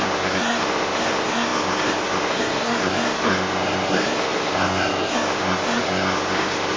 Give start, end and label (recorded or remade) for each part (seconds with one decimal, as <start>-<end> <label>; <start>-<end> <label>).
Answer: 0.0-6.8 remade